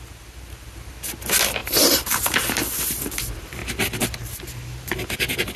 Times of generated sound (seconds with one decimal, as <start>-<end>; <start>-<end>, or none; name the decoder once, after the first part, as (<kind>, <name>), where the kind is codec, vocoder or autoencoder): 1.6-2.3 (vocoder, BigVGAN v2)